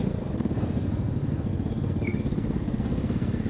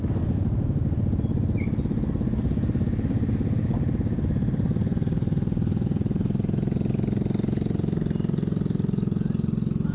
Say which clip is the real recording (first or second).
second